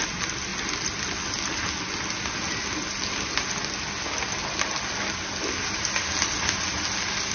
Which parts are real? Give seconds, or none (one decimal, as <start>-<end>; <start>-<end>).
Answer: 0.0-7.3